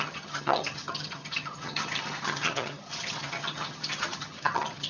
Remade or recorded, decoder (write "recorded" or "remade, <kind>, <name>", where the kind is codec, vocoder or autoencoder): remade, vocoder, HiFi-GAN